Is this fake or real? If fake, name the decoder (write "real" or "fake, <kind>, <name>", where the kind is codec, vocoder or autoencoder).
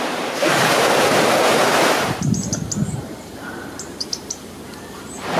fake, vocoder, BigVGAN v2